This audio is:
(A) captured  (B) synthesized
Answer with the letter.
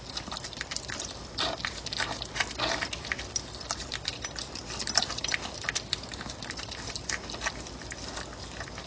A